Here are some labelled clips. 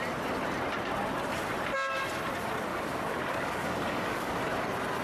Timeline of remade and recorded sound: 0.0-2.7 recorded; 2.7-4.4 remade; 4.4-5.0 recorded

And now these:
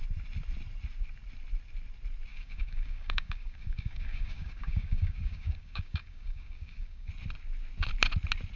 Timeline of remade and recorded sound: 0.0-2.3 recorded; 2.3-7.1 remade; 7.1-8.6 recorded

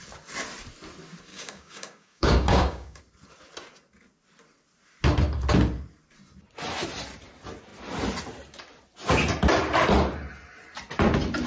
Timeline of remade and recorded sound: 0.0-1.3 recorded; 1.3-3.0 remade; 3.0-11.5 recorded

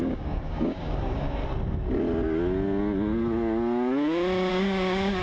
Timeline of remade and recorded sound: 0.0-1.4 remade; 1.4-4.5 recorded; 4.5-5.2 remade

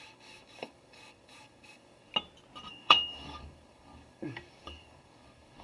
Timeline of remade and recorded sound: 0.0-2.1 remade; 2.1-2.7 recorded; 2.7-5.6 remade